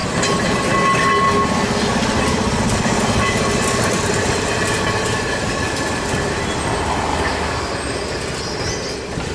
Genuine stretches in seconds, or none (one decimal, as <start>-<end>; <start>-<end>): 0.0-7.1; 7.7-9.3